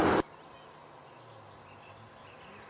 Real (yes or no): yes